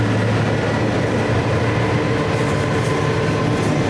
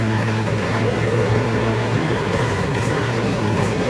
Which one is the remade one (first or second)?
second